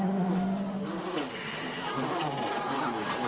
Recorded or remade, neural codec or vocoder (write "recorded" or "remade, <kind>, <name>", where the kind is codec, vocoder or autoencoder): recorded